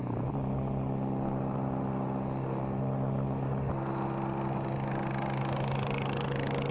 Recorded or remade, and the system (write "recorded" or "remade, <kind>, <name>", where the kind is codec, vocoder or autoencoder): recorded